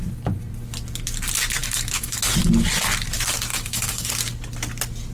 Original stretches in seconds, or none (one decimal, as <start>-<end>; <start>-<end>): 0.0-1.6; 2.2-3.5; 4.1-5.1